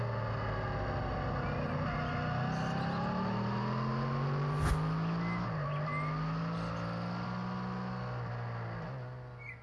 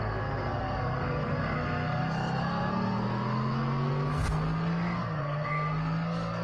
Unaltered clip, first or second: first